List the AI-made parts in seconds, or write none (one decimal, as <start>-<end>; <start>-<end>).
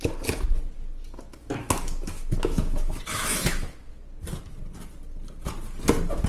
1.3-4.0